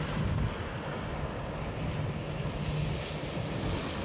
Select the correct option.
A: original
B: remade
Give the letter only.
A